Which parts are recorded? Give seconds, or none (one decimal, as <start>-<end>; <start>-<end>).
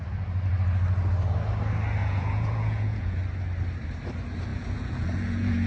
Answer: 0.0-2.0; 3.2-4.5